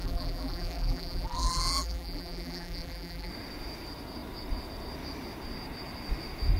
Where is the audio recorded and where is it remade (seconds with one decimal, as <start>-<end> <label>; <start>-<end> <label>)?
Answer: 0.0-3.3 remade; 3.3-6.6 recorded